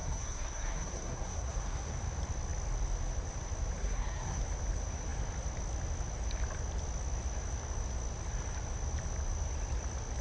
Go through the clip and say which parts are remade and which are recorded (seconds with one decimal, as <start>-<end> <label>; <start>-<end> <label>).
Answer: 0.0-1.9 remade; 1.9-3.8 recorded; 3.8-4.4 remade; 4.4-10.2 recorded